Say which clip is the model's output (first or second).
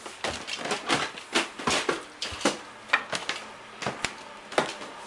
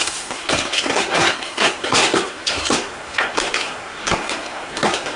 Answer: second